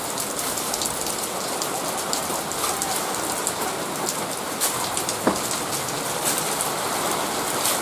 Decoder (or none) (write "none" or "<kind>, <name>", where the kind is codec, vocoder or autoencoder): none